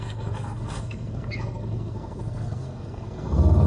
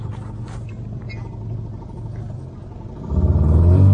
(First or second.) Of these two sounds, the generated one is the first